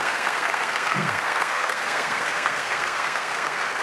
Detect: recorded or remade remade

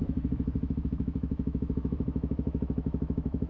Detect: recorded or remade remade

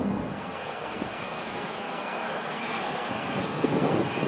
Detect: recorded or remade remade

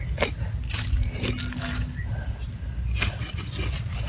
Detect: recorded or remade recorded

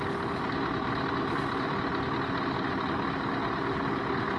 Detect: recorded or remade recorded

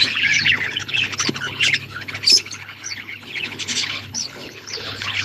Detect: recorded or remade remade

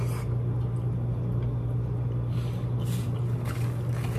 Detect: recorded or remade recorded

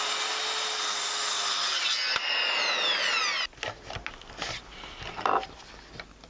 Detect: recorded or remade recorded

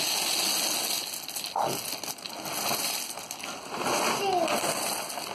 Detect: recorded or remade recorded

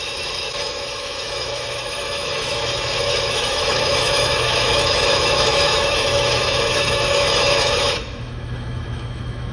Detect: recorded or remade remade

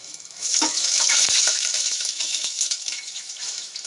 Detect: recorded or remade remade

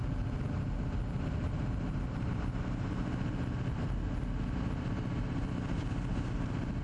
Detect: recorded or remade recorded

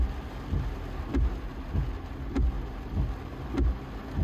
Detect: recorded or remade recorded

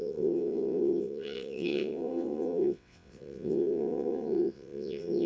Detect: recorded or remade remade